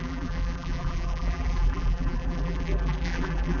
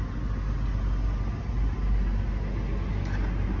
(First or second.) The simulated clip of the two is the first